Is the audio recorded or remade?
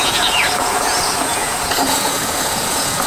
remade